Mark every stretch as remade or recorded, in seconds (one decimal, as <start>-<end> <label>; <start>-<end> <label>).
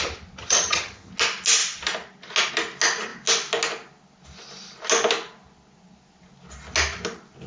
0.0-0.4 recorded; 0.4-1.1 remade; 1.1-7.5 recorded